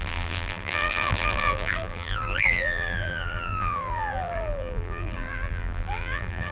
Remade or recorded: remade